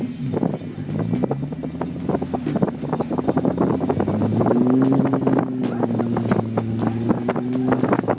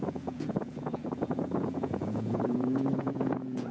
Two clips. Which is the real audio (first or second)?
first